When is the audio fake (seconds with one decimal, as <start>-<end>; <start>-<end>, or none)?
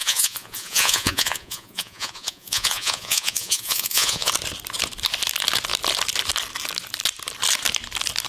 0.0-4.3